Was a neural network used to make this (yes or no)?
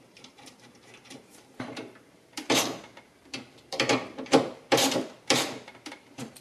yes